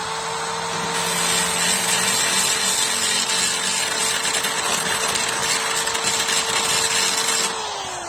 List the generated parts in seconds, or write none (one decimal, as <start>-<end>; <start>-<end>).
none

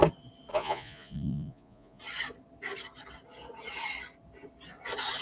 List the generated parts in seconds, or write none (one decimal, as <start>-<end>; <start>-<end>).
0.5-2.0

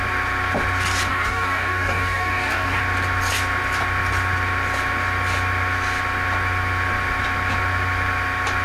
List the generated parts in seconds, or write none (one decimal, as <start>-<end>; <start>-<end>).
1.1-2.8

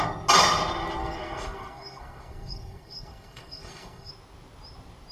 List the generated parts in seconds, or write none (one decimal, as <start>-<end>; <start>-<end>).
1.0-4.1

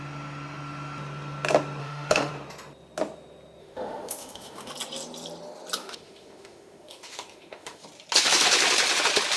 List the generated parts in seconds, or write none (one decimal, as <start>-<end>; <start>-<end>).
1.8-2.3; 3.6-4.7; 5.8-7.8